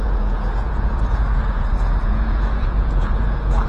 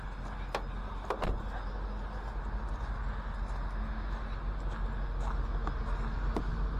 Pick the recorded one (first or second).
second